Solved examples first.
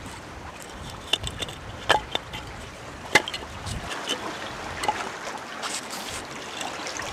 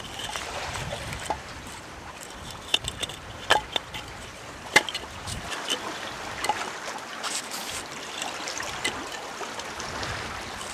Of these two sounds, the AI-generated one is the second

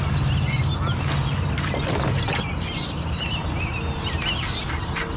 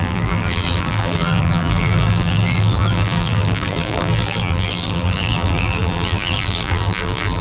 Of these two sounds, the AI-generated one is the second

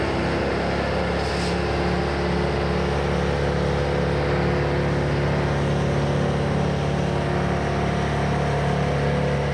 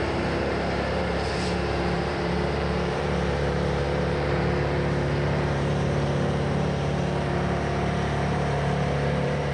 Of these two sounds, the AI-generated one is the second